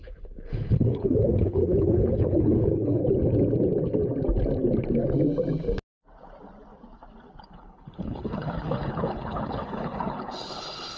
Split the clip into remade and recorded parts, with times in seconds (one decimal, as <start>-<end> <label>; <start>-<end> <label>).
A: 0.0-3.0 remade; 3.0-7.4 recorded; 7.4-11.0 remade